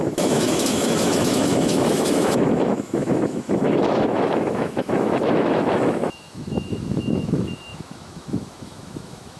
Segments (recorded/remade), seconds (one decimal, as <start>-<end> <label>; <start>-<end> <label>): 0.0-9.4 remade